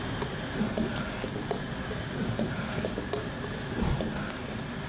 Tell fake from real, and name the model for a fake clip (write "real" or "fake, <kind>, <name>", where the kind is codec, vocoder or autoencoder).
real